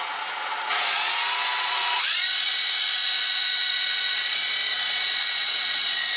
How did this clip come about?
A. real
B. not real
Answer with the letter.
B